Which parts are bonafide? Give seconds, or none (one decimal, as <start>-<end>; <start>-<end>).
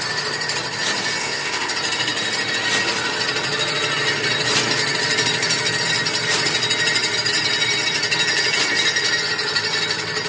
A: 0.0-1.2; 1.7-10.3